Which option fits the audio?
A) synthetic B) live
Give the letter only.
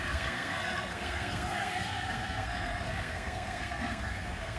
A